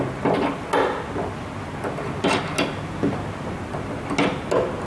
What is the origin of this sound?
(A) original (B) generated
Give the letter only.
A